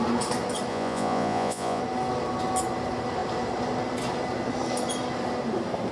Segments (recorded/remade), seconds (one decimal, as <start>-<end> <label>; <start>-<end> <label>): 0.0-0.7 recorded; 0.7-1.8 remade; 1.8-5.9 recorded